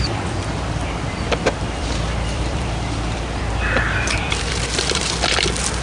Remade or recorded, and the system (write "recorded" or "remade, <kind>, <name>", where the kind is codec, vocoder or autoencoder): remade, vocoder, BigVGAN v2